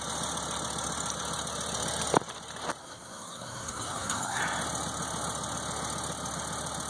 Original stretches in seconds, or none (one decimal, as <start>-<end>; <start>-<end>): 0.0-2.8; 4.4-6.9